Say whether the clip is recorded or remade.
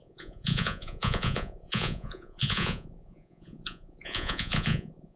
remade